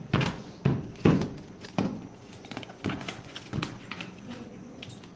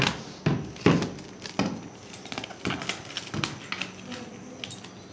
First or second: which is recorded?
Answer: second